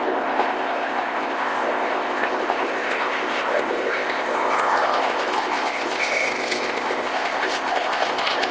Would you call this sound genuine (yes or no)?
no